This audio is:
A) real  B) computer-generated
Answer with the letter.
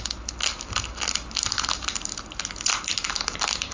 A